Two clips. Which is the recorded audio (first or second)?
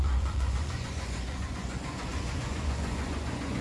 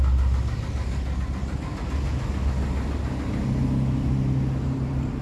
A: second